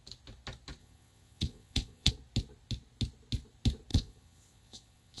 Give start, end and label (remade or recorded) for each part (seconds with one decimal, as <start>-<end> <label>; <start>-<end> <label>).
0.0-0.8 recorded; 0.8-2.1 remade; 2.1-3.9 recorded; 3.9-5.2 remade